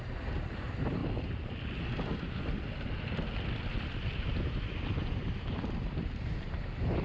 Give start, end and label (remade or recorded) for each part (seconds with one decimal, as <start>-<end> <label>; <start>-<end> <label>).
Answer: 0.0-1.0 remade; 1.0-3.7 recorded; 3.7-7.0 remade